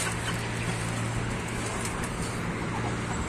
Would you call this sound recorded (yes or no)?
yes